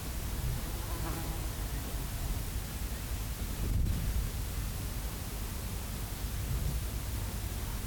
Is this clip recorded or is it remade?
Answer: recorded